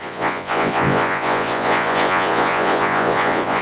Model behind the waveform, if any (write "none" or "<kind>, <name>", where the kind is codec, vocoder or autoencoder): vocoder, Vocos